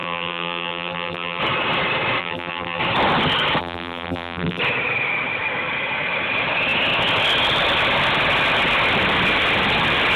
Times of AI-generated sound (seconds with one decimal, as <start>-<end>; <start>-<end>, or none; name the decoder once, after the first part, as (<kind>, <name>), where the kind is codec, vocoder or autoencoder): 0.0-1.4 (vocoder, BigVGAN v2); 2.2-2.8; 3.6-4.6